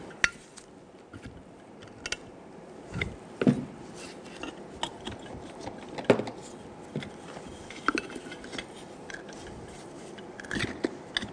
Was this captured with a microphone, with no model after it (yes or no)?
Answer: yes